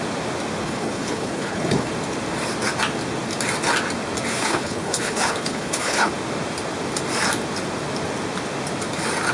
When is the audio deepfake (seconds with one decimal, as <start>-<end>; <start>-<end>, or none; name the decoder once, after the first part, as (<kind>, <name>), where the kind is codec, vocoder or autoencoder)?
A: 0.6-1.9 (codec, HILCodec); 4.3-6.1